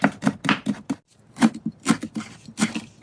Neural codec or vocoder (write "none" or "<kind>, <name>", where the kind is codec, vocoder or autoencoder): none